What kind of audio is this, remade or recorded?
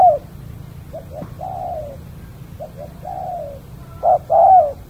recorded